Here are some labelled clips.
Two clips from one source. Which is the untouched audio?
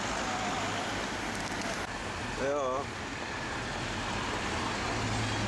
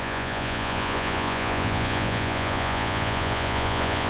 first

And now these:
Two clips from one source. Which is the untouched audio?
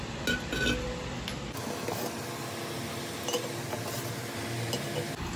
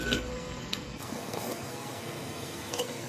first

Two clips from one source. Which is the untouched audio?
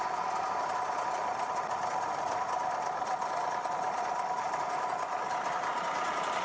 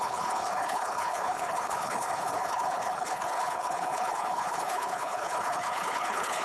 first